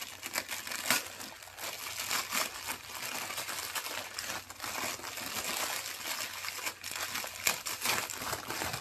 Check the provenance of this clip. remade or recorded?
recorded